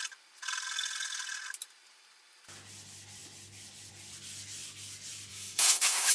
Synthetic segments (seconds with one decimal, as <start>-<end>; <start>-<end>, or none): 5.3-6.1